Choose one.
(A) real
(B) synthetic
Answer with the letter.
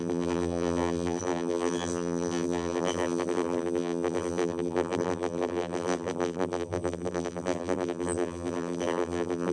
B